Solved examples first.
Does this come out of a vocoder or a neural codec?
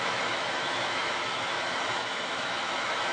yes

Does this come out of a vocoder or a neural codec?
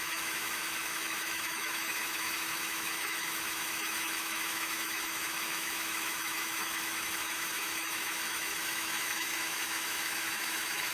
yes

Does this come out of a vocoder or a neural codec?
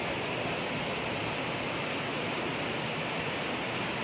no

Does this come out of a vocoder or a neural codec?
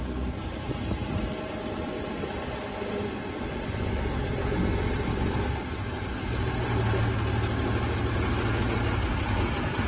no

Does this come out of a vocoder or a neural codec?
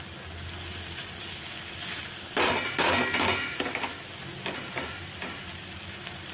no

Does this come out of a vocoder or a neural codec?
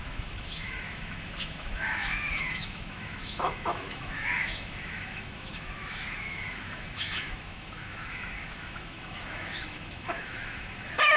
yes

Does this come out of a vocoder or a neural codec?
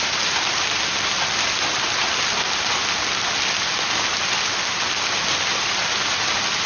no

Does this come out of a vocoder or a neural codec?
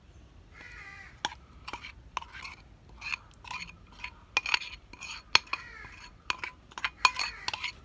no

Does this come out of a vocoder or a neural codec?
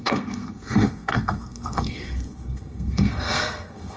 yes